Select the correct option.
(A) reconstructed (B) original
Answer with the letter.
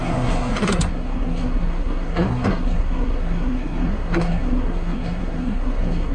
A